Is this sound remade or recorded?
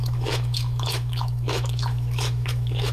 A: remade